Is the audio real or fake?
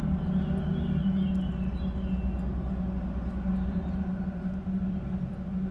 real